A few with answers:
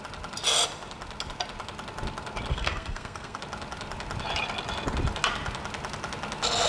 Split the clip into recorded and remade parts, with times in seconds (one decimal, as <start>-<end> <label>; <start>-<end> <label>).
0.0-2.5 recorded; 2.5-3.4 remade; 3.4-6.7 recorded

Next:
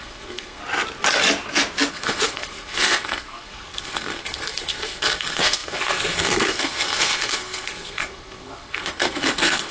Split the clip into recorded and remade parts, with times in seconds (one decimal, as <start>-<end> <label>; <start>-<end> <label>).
0.0-0.6 remade; 0.6-1.9 recorded; 1.9-9.7 remade

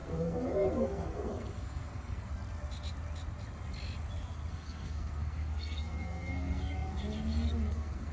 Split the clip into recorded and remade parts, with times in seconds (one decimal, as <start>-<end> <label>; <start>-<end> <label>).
0.0-2.3 remade; 2.3-4.5 recorded; 4.5-8.1 remade

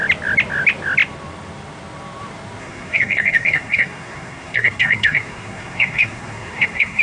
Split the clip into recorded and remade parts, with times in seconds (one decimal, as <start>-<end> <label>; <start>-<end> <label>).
0.0-2.6 recorded; 2.6-7.0 remade

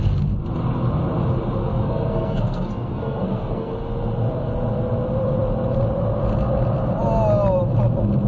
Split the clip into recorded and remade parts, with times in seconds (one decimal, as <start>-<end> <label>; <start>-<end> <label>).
0.0-1.6 recorded; 1.6-3.7 remade; 3.7-8.3 recorded

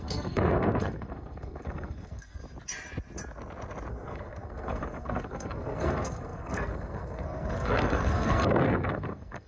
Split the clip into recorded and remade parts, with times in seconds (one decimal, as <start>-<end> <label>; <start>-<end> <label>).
0.0-2.4 remade; 2.4-3.9 recorded; 3.9-9.5 remade